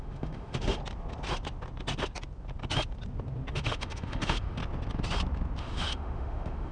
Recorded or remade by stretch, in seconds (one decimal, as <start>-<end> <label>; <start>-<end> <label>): 0.0-0.8 remade; 0.8-3.5 recorded; 3.5-4.6 remade; 4.6-5.6 recorded; 5.6-6.7 remade